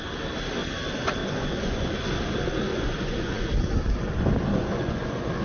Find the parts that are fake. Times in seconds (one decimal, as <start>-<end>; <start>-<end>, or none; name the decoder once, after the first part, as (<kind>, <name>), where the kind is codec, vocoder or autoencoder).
1.2-1.9 (vocoder, Vocos); 2.7-3.5; 4.5-5.4